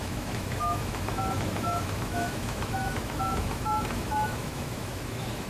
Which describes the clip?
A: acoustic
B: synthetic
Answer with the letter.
B